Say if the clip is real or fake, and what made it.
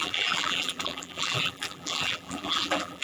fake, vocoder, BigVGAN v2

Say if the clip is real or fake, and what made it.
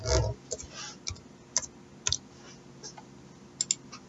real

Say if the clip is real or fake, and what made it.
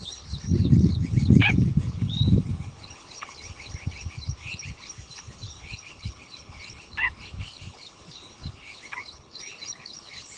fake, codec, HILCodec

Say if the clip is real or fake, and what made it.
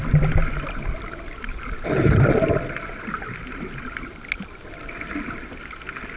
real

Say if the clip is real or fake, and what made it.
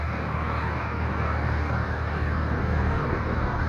fake, codec, DAC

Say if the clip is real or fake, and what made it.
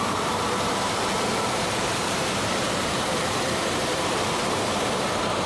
fake, vocoder, BigVGAN v2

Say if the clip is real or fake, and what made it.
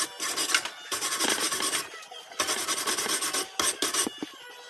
real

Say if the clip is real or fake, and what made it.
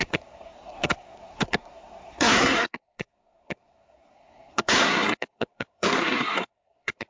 fake, codec, SNAC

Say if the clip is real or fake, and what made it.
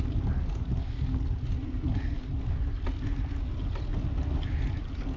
real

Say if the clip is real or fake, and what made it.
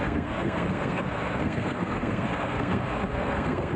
fake, codec, SNAC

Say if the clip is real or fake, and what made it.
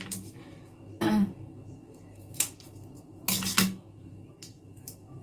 fake, autoencoder, DAC-VAE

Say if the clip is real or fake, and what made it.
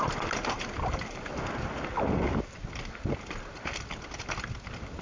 real